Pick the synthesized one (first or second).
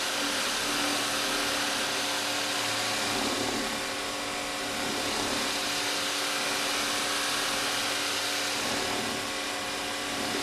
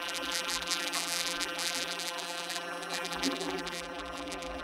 second